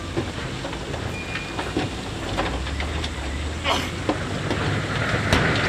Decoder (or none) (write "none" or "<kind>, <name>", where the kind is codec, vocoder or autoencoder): none